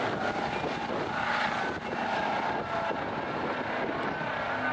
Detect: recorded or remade recorded